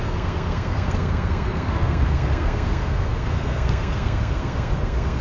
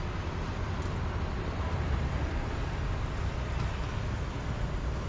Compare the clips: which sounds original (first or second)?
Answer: second